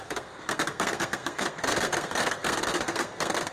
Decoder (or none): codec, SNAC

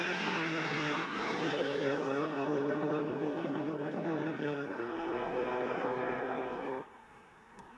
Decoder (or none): codec, SNAC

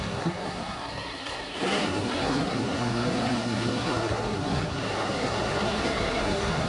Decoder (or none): codec, SNAC